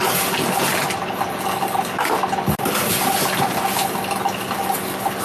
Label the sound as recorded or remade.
recorded